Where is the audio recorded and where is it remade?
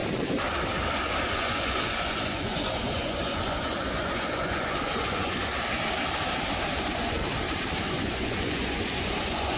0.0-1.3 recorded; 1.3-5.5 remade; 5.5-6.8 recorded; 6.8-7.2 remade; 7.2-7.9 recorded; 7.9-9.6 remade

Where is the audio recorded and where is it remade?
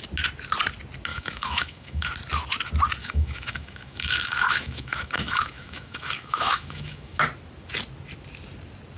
0.0-1.1 recorded; 1.1-2.1 remade; 2.1-3.0 recorded; 3.0-7.2 remade; 7.2-9.0 recorded